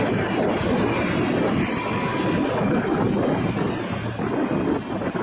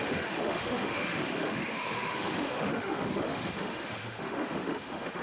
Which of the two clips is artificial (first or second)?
second